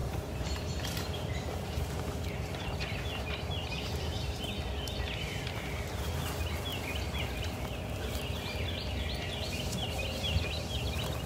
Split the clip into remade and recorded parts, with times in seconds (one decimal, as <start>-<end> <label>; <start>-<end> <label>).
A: 0.0-4.4 remade; 4.4-11.3 recorded